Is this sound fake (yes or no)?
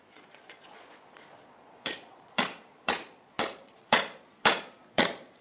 yes